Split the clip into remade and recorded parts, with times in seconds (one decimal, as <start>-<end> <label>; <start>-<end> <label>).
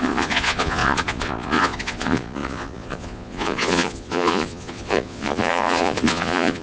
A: 0.0-6.6 remade